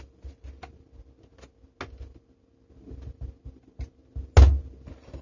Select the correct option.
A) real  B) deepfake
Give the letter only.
A